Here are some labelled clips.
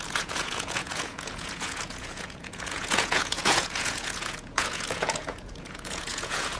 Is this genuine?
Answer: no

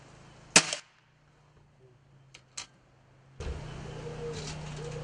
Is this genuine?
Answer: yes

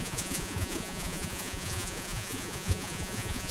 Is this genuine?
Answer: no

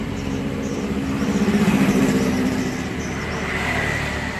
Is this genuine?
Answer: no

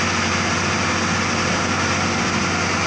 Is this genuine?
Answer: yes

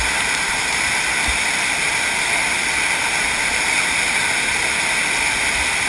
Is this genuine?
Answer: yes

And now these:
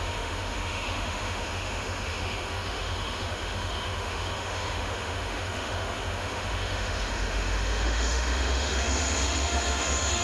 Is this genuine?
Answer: no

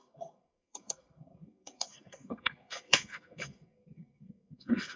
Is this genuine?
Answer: no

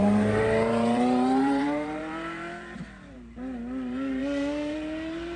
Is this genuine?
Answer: no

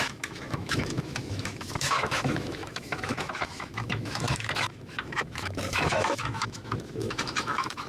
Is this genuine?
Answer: no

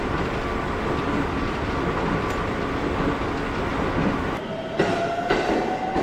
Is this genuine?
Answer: yes